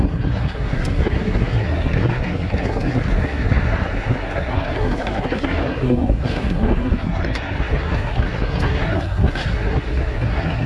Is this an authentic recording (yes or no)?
no